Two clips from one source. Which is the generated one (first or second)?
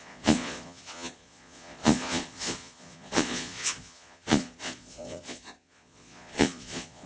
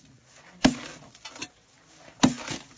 first